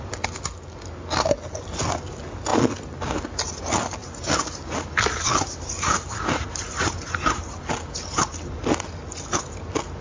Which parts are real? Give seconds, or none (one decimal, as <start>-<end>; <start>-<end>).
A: 0.0-4.0; 7.5-10.0